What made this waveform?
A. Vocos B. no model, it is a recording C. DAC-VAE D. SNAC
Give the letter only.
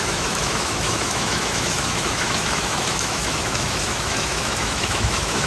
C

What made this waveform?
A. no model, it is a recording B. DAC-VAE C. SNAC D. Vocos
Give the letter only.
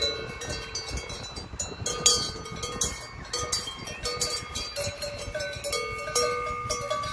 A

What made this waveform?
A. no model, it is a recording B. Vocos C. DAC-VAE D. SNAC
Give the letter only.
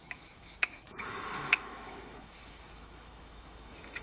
C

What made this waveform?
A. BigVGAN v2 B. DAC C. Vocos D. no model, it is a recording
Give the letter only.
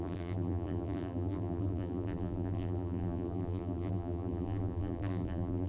A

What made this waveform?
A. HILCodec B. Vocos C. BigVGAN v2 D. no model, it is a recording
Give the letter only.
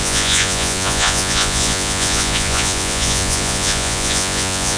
B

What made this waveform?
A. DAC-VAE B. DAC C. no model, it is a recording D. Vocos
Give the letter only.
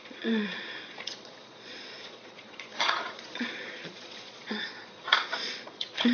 D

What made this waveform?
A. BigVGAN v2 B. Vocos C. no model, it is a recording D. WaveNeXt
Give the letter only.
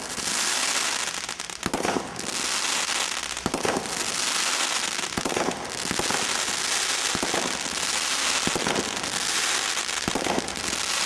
C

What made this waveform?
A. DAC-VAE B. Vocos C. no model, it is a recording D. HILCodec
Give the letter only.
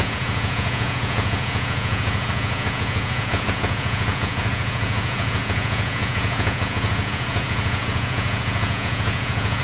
B